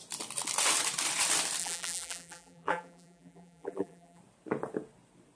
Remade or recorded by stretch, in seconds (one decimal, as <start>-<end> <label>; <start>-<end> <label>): 0.0-1.6 recorded; 1.6-4.2 remade; 4.2-5.4 recorded